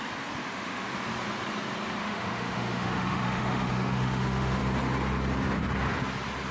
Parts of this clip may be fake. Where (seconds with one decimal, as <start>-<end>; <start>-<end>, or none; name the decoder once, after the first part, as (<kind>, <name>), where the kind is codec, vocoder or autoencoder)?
0.4-0.9 (autoencoder, DAC-VAE); 2.0-4.6